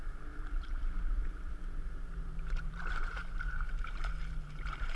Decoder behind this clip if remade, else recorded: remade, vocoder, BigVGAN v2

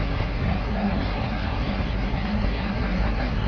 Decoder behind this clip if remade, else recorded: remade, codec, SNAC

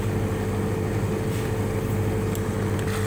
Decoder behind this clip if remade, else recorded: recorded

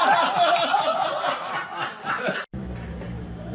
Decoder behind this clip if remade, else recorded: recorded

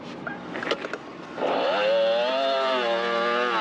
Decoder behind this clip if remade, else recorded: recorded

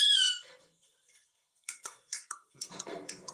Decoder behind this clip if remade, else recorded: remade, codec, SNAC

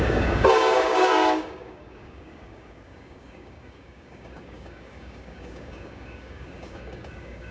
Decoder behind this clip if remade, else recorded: remade, codec, DAC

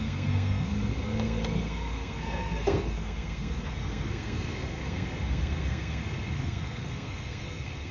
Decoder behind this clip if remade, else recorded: remade, codec, SNAC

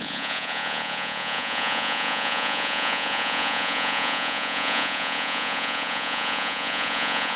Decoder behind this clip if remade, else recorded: remade, vocoder, Vocos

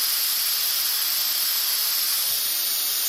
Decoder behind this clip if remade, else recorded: recorded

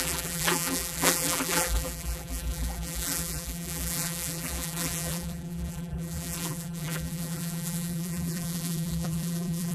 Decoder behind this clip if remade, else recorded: remade, vocoder, BigVGAN v2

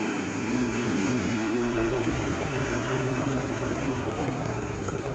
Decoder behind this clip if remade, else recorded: remade, codec, SNAC